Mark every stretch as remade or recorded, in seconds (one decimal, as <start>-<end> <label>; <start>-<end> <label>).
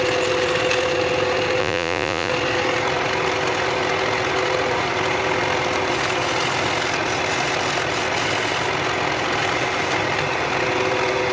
0.0-1.6 recorded; 1.6-2.3 remade; 2.3-11.3 recorded